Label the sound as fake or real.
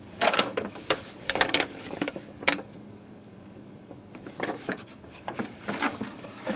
fake